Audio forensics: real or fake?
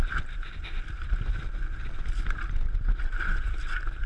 real